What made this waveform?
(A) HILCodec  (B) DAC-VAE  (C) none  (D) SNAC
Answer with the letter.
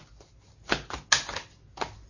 C